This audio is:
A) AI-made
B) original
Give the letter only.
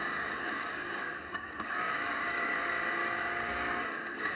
A